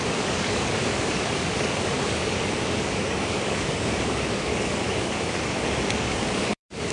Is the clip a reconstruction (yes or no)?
yes